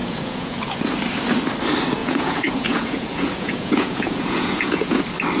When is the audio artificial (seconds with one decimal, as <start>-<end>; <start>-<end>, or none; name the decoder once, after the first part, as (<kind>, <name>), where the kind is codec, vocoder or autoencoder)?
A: 0.0-0.9 (vocoder, Vocos); 2.0-5.0